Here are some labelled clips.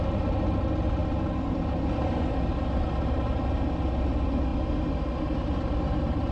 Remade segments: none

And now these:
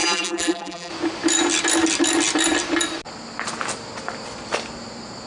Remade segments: 0.0-0.9

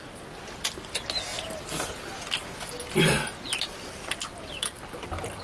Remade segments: none